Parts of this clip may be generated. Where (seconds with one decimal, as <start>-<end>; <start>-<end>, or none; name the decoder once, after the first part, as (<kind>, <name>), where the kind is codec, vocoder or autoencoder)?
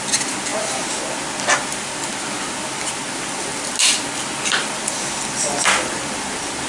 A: 0.5-1.0 (vocoder, BigVGAN v2)